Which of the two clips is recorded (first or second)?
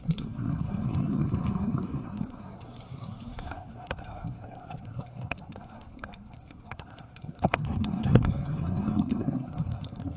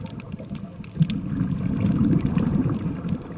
second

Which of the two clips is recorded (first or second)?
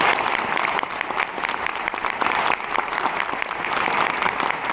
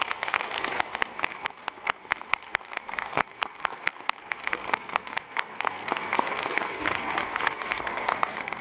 first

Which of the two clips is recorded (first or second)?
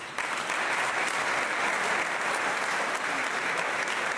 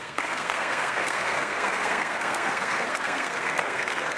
first